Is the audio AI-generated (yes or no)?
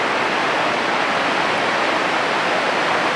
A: no